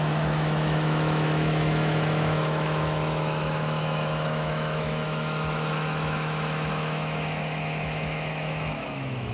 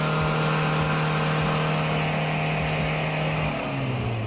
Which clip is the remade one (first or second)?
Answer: first